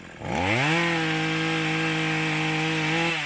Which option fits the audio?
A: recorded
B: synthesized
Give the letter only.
A